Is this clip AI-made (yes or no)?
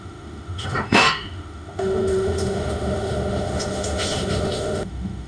yes